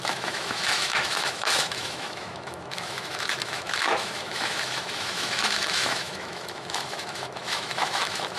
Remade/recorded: remade